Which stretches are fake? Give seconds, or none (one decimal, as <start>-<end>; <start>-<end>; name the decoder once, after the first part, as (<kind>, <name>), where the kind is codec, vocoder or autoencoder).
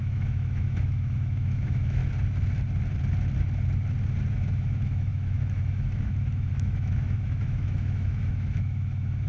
0.0-2.0 (autoencoder, DAC-VAE); 4.3-9.3